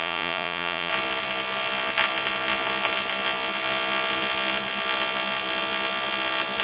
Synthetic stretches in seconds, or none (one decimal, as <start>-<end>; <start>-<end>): 0.0-0.9